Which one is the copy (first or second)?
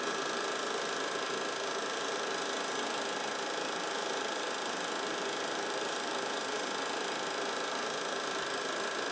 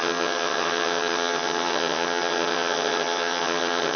second